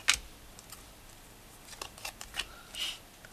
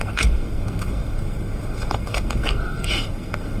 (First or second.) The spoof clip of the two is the second